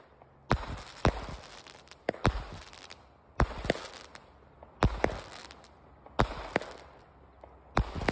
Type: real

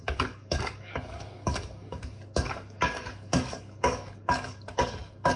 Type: fake